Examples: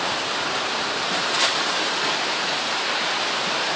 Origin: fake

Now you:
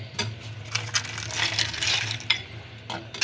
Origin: real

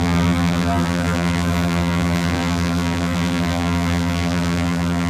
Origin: fake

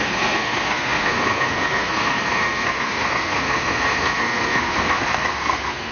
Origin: fake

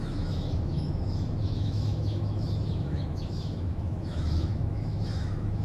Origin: fake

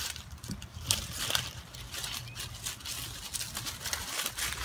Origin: real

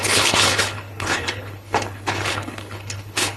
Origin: fake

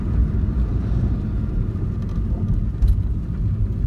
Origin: real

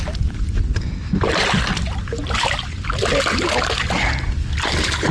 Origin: real